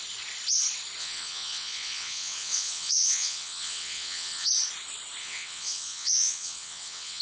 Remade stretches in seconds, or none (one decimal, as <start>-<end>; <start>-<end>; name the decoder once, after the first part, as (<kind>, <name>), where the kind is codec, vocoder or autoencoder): 1.0-4.5 (vocoder, WaveNeXt); 5.2-7.2

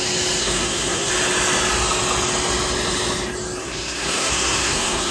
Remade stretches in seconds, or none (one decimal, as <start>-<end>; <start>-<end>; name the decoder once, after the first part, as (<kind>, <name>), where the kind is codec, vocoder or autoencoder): 0.4-1.1 (codec, SNAC); 3.6-5.1

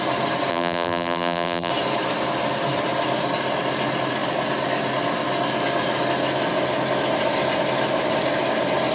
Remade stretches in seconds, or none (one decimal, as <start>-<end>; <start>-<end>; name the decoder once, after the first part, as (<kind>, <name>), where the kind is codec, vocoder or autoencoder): 0.5-1.7 (vocoder, BigVGAN v2)